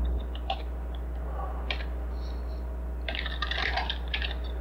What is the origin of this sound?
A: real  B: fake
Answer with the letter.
B